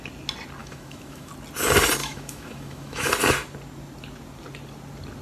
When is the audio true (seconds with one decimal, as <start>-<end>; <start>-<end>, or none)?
0.0-0.6; 1.3-2.0; 3.1-5.2